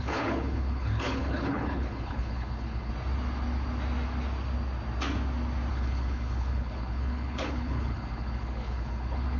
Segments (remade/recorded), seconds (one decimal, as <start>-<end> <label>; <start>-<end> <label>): 0.0-2.9 remade; 2.9-5.7 recorded; 5.7-9.4 remade